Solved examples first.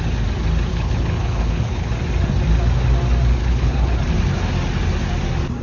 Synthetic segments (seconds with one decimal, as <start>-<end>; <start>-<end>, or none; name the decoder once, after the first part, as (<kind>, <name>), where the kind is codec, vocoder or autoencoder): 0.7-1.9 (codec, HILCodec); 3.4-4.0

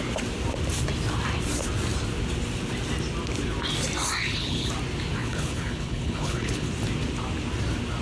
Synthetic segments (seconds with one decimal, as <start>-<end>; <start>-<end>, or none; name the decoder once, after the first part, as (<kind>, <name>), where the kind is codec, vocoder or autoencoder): 4.2-4.7 (codec, HILCodec); 5.2-6.7

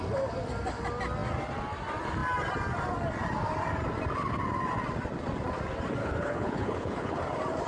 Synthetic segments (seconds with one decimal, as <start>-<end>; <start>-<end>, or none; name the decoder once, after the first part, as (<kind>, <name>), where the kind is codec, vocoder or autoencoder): 6.0-7.2 (codec, HILCodec)